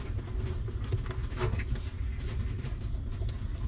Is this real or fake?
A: real